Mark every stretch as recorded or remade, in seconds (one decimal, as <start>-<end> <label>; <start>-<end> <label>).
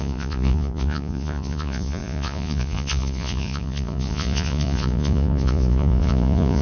0.0-6.6 remade